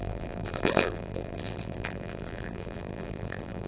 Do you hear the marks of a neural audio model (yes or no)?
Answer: yes